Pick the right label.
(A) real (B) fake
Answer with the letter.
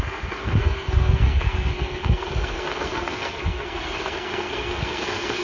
B